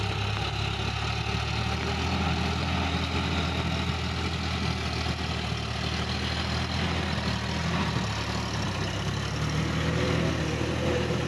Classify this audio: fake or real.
real